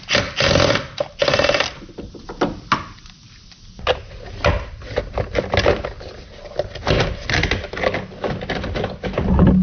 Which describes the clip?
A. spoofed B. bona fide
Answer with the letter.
B